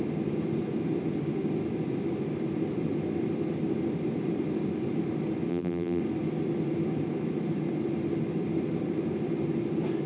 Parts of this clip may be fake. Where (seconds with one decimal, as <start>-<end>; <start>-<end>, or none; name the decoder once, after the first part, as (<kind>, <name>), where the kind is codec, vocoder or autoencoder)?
5.5-6.0 (vocoder, BigVGAN v2)